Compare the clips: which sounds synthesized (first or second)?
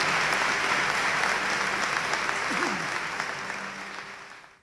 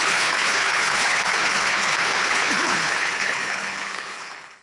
second